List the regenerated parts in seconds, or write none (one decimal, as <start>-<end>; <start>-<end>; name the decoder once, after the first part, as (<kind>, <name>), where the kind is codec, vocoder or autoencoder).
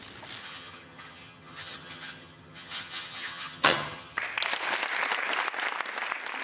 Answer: 0.4-4.2 (vocoder, HiFi-GAN)